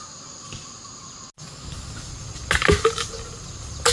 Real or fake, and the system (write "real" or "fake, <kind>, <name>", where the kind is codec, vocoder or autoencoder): real